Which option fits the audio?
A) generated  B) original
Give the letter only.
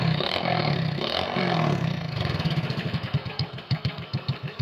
A